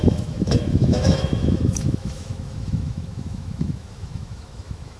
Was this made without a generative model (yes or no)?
no